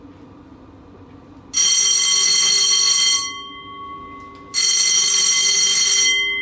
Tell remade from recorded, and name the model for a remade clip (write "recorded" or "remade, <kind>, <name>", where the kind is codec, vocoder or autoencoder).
recorded